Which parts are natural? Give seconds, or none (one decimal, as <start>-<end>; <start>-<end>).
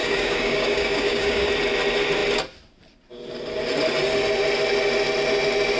1.5-5.8